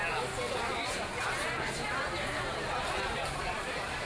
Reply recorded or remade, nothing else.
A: recorded